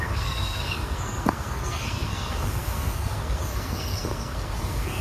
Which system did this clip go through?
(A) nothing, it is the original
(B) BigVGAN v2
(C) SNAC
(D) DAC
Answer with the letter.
C